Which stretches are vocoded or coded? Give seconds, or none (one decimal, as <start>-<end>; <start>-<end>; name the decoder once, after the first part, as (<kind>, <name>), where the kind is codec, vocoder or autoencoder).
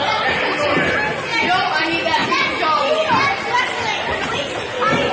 none